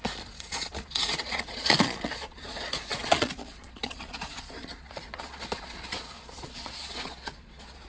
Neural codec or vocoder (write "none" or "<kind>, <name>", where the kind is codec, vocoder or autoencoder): vocoder, Vocos